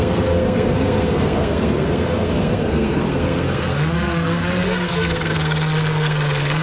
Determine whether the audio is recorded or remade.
remade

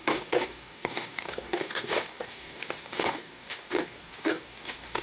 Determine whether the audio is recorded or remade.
remade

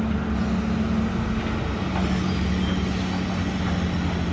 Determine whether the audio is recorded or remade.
recorded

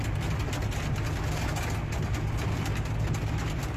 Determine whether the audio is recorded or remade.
recorded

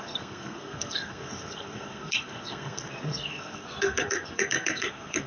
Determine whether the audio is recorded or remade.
remade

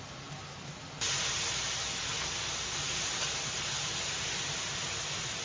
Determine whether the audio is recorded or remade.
recorded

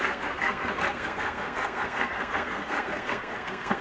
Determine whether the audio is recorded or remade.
remade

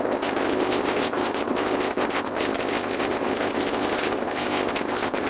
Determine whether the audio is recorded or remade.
remade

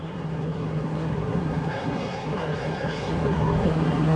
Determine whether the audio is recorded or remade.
remade